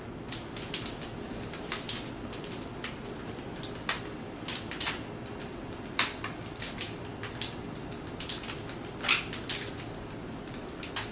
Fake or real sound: real